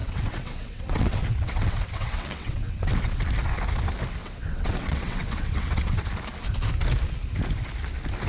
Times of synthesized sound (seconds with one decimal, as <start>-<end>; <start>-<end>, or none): 0.0-3.2; 4.2-6.0

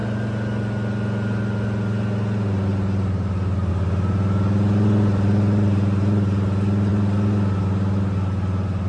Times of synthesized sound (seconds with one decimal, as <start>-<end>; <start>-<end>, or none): none